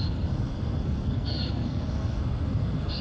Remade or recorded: remade